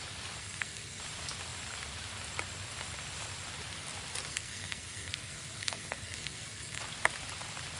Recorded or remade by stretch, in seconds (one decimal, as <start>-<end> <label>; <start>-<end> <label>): 0.0-0.4 recorded; 0.4-1.0 remade; 1.0-4.3 recorded; 4.3-6.8 remade; 6.8-7.8 recorded